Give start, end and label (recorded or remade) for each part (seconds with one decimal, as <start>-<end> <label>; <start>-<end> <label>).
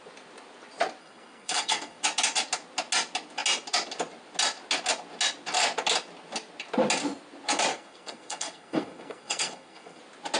0.0-1.0 recorded; 1.0-2.0 remade; 2.0-7.7 recorded; 7.7-10.0 remade; 10.0-10.4 recorded